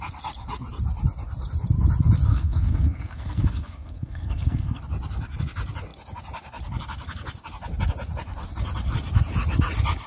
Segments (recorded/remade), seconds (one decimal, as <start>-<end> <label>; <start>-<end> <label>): 0.0-2.3 recorded; 2.3-4.8 remade; 4.8-10.1 recorded